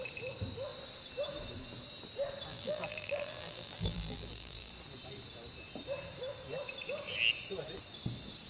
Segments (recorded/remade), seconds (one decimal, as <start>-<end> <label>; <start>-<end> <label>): 0.0-2.5 recorded; 2.5-4.7 remade; 4.7-8.5 recorded